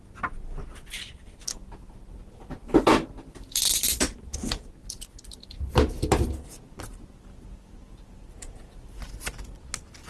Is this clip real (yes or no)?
yes